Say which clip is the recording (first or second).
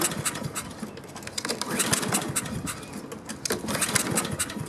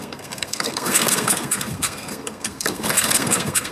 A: first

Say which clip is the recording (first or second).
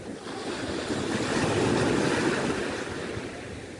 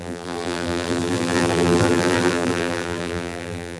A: first